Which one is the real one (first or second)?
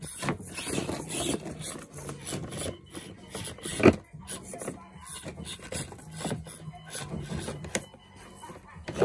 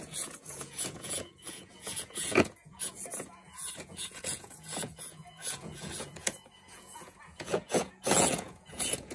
first